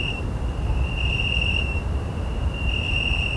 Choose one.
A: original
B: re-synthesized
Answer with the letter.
B